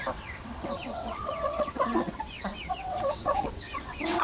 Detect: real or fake fake